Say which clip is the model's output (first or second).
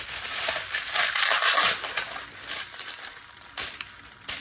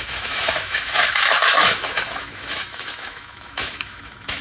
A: second